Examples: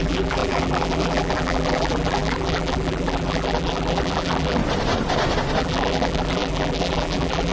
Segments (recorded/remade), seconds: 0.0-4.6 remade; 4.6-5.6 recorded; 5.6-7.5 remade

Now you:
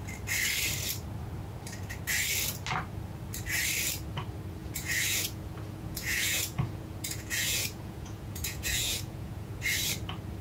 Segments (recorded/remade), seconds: 0.0-4.6 recorded; 4.6-9.6 remade; 9.6-10.4 recorded

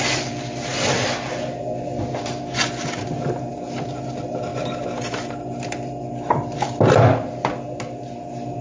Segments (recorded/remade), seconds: 0.0-8.6 recorded

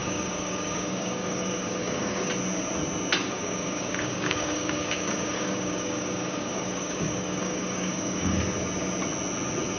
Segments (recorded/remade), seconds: 0.0-2.3 remade; 2.3-3.2 recorded; 3.2-8.4 remade; 8.4-9.8 recorded

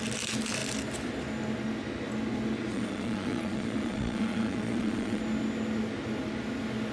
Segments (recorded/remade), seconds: 0.0-2.7 recorded; 2.7-5.2 remade; 5.2-6.9 recorded